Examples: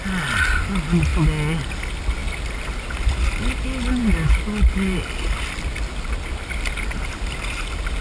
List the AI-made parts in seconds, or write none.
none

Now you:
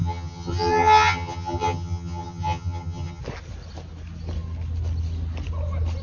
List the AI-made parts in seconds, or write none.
0.0-3.2 (vocoder, HiFi-GAN)

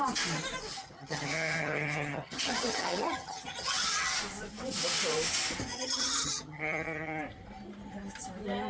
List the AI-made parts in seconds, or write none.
0.7-4.2 (vocoder, HiFi-GAN); 5.7-7.2

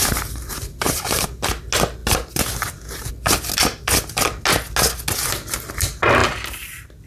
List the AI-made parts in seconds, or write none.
0.0-1.4 (vocoder, BigVGAN v2)